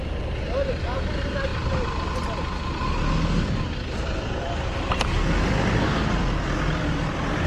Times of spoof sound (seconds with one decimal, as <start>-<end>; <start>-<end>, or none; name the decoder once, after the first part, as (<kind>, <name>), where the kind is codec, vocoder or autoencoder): none